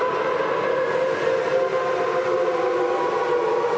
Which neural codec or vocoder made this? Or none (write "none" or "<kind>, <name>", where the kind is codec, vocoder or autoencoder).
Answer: none